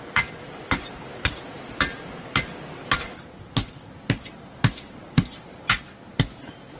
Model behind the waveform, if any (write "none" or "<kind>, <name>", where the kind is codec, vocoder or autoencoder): none